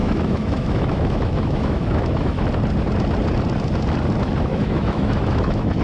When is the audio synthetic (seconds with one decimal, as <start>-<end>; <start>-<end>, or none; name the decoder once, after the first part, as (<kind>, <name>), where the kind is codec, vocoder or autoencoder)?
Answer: 0.0-2.4 (autoencoder, DAC-VAE); 4.5-5.8